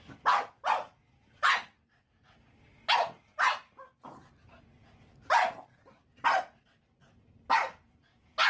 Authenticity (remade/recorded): recorded